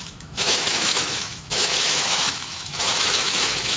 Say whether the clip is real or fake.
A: fake